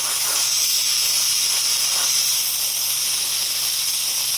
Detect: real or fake real